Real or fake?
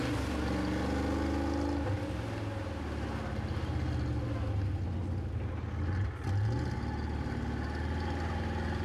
real